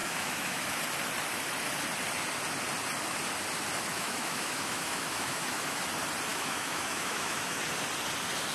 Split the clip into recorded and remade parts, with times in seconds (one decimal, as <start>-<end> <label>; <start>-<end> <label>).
0.0-0.8 remade; 0.8-3.9 recorded; 3.9-5.8 remade; 5.8-6.3 recorded; 6.3-7.6 remade; 7.6-8.5 recorded